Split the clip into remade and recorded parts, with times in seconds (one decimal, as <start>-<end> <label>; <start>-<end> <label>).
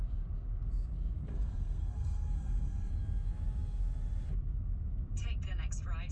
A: 0.0-1.3 recorded; 1.3-2.9 remade; 2.9-6.1 recorded